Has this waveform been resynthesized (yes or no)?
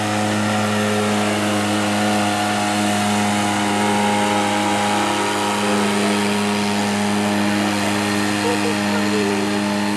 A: no